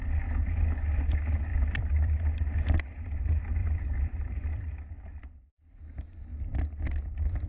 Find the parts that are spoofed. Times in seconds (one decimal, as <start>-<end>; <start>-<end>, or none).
1.5-2.6; 3.6-5.8

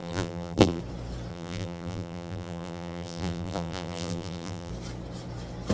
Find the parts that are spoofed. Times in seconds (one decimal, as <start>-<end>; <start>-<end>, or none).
0.0-0.8; 1.3-4.7

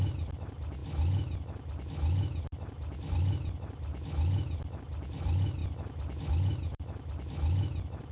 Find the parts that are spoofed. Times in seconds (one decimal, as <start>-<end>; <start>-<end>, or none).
0.0-0.8; 3.1-3.9; 4.8-5.6; 6.3-8.1

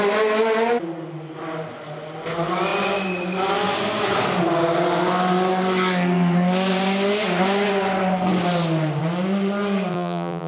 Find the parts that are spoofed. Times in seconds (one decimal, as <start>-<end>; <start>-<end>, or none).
9.9-10.5

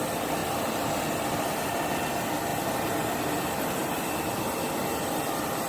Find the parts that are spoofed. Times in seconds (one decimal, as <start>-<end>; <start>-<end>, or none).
3.8-5.2

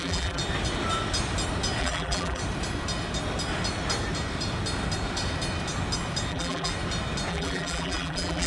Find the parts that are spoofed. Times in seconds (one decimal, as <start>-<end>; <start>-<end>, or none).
0.0-0.4; 1.8-2.4; 6.3-6.7; 7.3-8.5